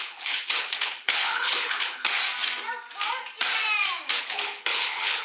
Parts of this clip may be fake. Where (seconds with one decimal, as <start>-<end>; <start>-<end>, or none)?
0.0-2.2; 4.2-5.2